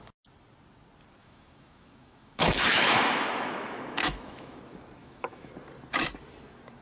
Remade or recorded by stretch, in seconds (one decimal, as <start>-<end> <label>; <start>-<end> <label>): 0.0-1.2 recorded; 1.2-4.6 remade; 4.6-5.0 recorded; 5.0-5.5 remade; 5.5-6.8 recorded